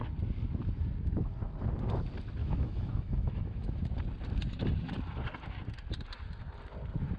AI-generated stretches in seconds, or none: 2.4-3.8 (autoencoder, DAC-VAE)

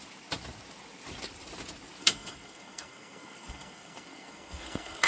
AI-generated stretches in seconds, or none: 2.0-5.1 (codec, SNAC)

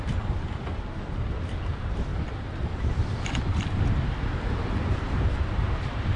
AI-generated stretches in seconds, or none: 0.0-0.7 (vocoder, BigVGAN v2); 1.7-6.2

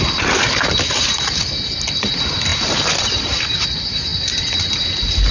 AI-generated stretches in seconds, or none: none

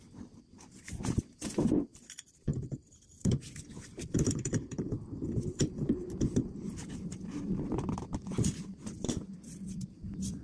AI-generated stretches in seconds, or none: 0.0-1.9 (vocoder, BigVGAN v2); 2.7-10.4

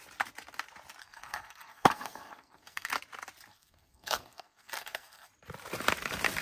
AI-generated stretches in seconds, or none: 1.0-2.9 (codec, SNAC); 3.5-5.3

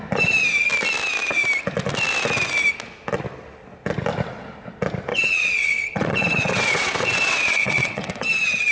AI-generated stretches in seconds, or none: 5.1-8.2 (vocoder, WaveNeXt)